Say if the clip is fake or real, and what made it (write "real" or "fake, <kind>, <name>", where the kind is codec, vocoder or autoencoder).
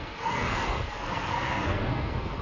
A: fake, codec, SNAC